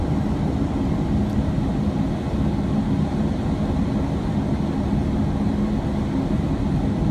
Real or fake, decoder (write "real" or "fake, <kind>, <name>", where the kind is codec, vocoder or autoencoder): real